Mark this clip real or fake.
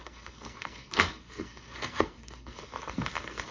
fake